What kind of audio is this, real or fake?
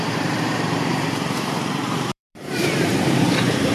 fake